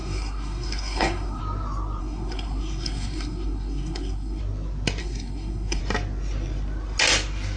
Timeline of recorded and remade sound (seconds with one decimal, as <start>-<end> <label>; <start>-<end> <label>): 0.0-1.4 remade; 1.4-2.0 recorded; 2.0-4.4 remade; 4.4-5.0 recorded; 5.0-5.8 remade; 5.8-7.6 recorded